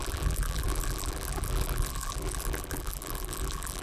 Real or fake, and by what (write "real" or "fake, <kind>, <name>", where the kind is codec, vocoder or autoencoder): fake, vocoder, BigVGAN v2